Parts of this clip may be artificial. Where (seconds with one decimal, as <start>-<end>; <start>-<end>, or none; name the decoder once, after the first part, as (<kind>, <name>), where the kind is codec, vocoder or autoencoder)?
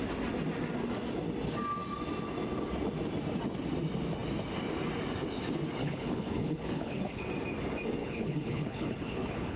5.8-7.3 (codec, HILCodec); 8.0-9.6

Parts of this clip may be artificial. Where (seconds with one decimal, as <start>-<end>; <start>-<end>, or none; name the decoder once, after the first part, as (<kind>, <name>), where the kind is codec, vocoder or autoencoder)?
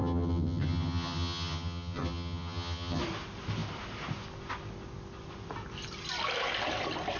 0.0-3.0 (vocoder, HiFi-GAN)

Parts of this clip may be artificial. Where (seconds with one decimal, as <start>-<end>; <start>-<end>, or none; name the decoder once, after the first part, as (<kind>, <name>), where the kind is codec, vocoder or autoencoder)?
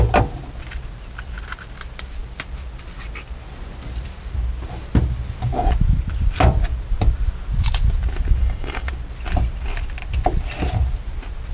8.4-8.9 (codec, DAC)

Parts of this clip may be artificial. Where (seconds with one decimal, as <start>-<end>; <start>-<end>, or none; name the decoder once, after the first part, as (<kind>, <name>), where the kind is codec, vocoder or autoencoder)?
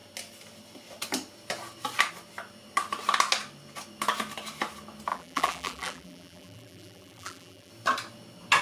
5.1-7.7 (vocoder, BigVGAN v2)